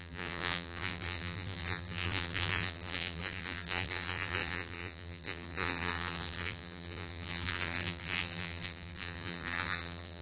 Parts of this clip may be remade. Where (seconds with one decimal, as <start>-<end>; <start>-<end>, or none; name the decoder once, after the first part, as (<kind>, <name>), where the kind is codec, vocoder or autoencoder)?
0.0-10.2 (vocoder, BigVGAN v2)